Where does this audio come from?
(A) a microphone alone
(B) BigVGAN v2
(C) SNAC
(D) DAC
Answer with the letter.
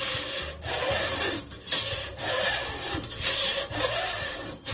B